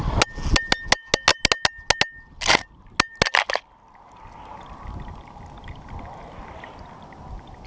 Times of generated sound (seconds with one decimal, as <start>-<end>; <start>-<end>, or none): none